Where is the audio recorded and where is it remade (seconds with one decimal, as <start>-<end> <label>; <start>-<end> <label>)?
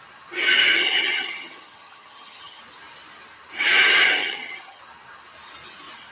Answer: 0.0-0.6 recorded; 0.6-2.6 remade; 2.6-4.2 recorded; 4.2-4.8 remade; 4.8-6.1 recorded